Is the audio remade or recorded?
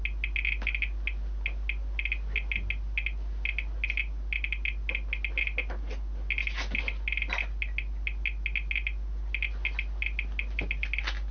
recorded